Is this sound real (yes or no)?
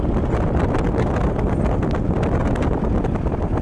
yes